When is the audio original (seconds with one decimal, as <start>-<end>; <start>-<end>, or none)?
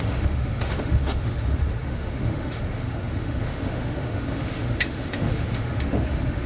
none